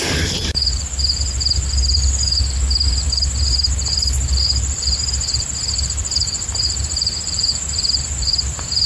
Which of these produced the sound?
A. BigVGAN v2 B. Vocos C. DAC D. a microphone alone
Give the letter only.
A